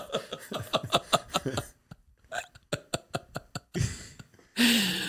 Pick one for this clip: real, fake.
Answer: real